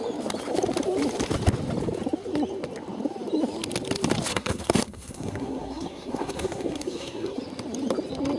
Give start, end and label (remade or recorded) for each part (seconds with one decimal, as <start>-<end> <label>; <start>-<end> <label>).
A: 0.0-4.3 recorded; 4.3-7.4 remade; 7.4-8.4 recorded